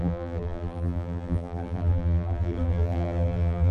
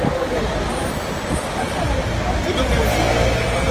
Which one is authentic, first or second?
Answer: second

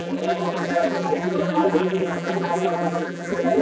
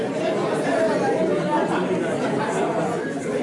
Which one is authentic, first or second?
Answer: second